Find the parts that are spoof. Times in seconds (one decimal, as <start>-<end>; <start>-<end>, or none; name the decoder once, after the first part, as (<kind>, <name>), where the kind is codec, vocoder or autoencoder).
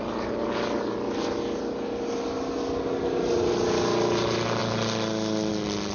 none